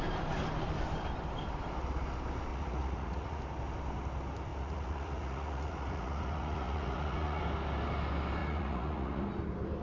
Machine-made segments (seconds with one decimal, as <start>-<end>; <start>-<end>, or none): 2.5-3.4; 4.5-7.4; 8.4-9.2

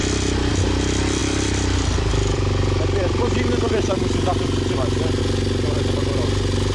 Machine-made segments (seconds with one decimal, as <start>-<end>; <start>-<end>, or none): 1.2-5.2

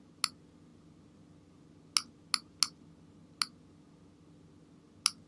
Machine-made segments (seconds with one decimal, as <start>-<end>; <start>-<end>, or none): none